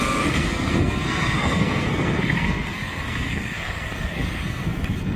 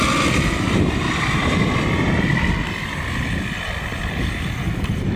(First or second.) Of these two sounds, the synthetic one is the first